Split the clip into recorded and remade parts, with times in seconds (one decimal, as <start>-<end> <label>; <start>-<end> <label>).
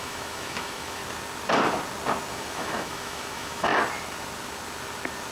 0.0-1.0 remade; 1.0-2.3 recorded; 2.3-3.7 remade; 3.7-5.3 recorded